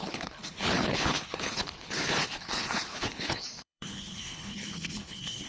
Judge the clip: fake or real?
fake